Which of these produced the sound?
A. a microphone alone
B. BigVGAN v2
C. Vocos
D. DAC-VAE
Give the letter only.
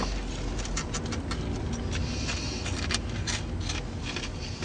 A